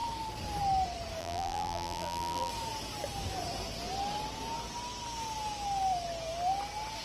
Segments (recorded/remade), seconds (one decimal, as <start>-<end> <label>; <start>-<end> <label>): 0.0-1.2 recorded; 1.2-2.5 remade; 2.5-7.0 recorded